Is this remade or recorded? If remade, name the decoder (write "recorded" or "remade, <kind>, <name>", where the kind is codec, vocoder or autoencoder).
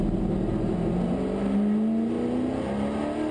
recorded